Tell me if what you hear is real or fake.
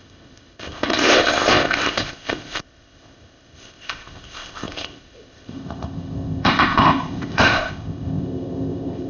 fake